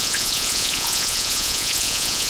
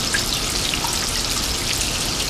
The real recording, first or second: second